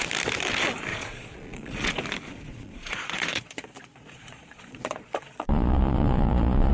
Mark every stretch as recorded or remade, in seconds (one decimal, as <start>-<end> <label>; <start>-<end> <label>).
0.0-0.9 recorded; 0.9-1.9 remade; 1.9-2.5 recorded; 2.5-6.7 remade